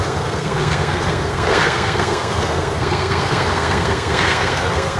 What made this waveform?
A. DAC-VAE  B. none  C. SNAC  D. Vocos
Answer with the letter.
C